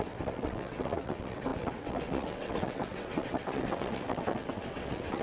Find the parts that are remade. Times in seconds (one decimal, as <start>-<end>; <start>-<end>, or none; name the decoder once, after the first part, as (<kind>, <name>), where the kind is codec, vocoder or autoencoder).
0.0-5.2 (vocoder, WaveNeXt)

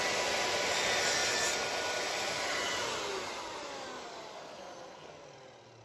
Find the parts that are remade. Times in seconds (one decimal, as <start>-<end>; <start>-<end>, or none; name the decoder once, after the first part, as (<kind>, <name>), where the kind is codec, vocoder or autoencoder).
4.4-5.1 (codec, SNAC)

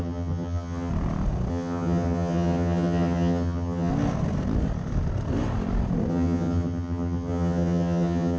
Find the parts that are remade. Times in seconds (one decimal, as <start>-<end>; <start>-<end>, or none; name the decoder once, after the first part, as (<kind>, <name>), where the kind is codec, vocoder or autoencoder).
0.0-0.9 (vocoder, HiFi-GAN); 1.5-3.9; 6.1-8.4

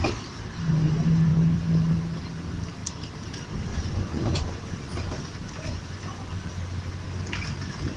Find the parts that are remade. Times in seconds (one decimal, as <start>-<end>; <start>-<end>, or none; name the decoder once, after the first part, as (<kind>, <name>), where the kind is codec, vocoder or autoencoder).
3.7-6.5 (vocoder, Vocos)

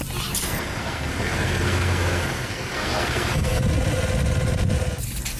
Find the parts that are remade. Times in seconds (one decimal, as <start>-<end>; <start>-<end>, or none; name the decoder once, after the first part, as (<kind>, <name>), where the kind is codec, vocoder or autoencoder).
0.4-3.6 (codec, SNAC)

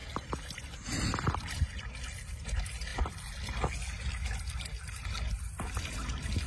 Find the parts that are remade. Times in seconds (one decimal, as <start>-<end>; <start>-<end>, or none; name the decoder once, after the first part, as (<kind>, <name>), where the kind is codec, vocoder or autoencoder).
none

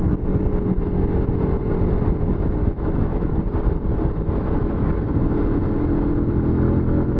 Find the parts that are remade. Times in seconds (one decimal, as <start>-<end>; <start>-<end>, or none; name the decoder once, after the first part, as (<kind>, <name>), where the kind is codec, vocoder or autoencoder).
2.6-3.4 (autoencoder, DAC-VAE)